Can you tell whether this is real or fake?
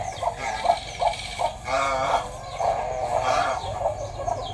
real